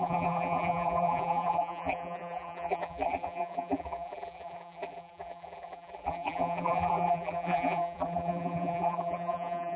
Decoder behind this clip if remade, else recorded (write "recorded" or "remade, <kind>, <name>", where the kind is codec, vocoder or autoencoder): remade, vocoder, BigVGAN v2